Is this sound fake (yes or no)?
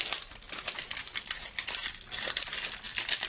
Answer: no